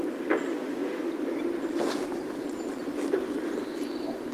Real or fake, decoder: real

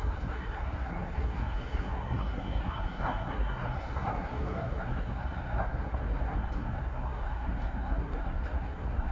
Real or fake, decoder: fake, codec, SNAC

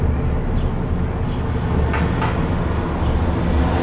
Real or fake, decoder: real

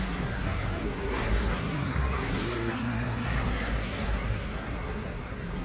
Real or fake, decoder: fake, codec, SNAC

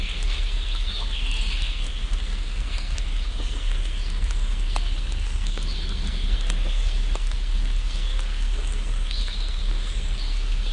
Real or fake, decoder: fake, codec, SNAC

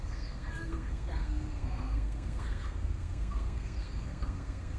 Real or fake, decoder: fake, codec, SNAC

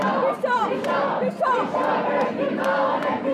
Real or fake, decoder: real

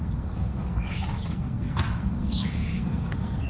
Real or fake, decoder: fake, codec, SNAC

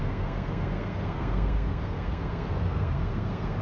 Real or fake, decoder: fake, codec, SNAC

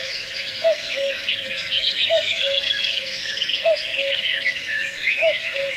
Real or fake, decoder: fake, codec, SNAC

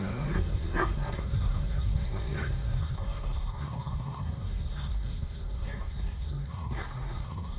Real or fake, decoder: fake, codec, SNAC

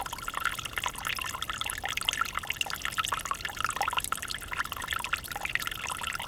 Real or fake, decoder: real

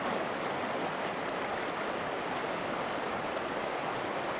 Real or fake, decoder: real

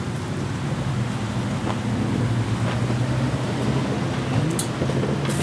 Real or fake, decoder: real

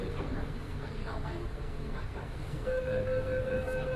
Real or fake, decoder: fake, codec, SNAC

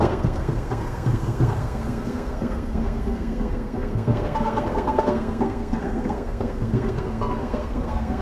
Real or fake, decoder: fake, codec, SNAC